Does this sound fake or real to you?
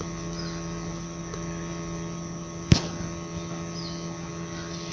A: real